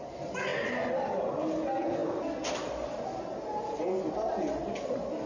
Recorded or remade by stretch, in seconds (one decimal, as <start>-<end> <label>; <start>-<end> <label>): 0.0-5.3 recorded